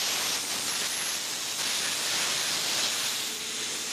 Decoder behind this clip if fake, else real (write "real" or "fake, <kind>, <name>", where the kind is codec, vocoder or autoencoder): real